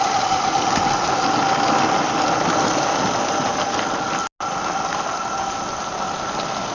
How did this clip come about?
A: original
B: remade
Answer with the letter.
A